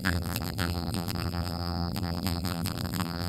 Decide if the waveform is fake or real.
fake